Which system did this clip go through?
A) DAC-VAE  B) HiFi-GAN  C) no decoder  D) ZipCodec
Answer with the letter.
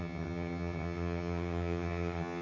B